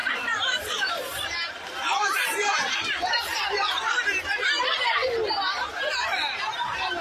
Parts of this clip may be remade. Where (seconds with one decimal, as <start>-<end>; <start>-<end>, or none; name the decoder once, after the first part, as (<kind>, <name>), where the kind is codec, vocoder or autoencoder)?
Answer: 0.0-5.0 (vocoder, BigVGAN v2); 5.6-7.0